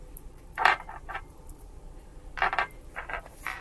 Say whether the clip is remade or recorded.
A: remade